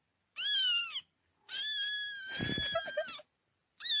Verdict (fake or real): real